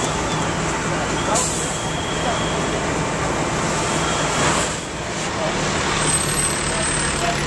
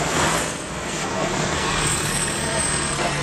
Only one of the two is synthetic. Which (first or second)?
second